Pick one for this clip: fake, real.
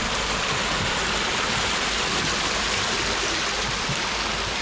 real